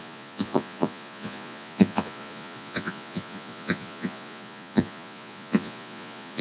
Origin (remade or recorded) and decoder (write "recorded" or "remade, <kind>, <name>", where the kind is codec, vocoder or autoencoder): remade, vocoder, Vocos